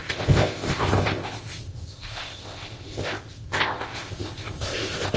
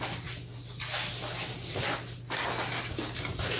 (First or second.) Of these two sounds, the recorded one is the second